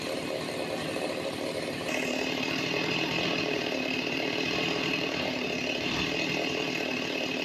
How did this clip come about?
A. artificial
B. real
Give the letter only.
A